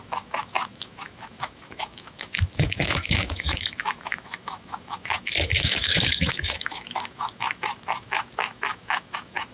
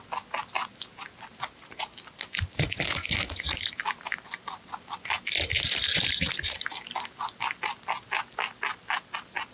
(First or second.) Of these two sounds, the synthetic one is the first